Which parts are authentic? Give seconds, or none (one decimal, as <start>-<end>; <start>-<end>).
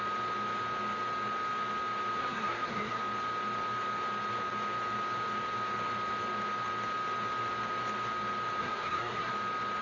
0.0-2.2; 3.0-8.6; 9.3-9.8